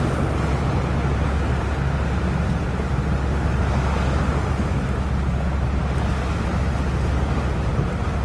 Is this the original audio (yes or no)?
yes